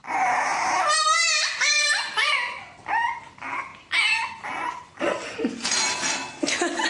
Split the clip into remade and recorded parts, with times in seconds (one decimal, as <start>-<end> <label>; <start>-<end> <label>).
0.0-0.5 recorded; 0.5-2.3 remade; 2.3-6.9 recorded